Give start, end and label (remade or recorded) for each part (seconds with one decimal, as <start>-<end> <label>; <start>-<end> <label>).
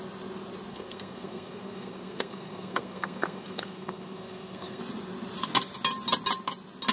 0.0-0.7 recorded; 0.7-4.8 remade; 4.8-6.9 recorded